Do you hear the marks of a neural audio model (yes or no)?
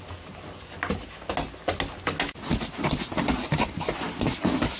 no